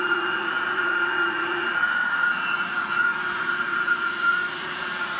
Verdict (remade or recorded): remade